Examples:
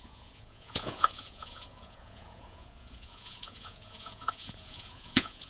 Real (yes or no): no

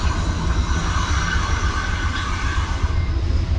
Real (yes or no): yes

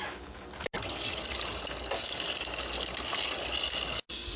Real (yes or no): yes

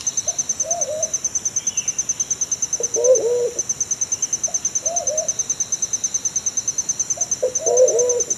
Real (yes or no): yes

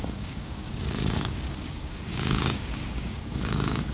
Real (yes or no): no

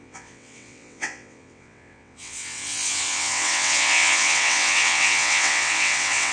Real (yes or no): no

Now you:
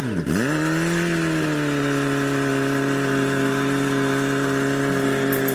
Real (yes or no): yes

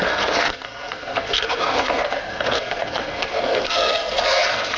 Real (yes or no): no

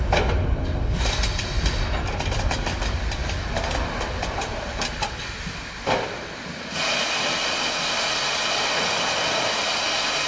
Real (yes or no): yes